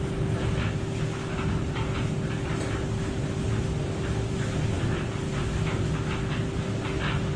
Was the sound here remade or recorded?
recorded